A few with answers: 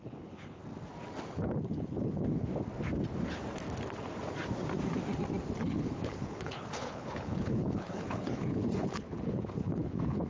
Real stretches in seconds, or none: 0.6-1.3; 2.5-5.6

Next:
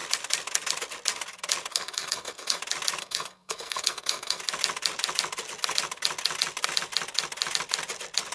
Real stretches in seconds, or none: 0.0-1.7; 2.6-3.0; 4.4-8.3

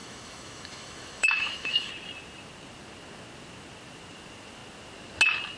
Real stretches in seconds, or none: 1.9-5.6